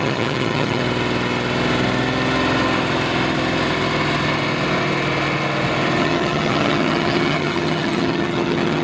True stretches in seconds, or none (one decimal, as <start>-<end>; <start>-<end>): 0.8-6.0